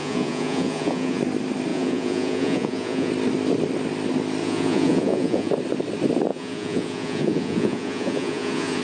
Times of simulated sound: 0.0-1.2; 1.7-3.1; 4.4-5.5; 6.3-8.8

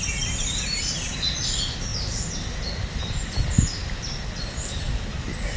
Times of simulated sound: none

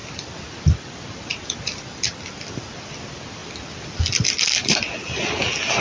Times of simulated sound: none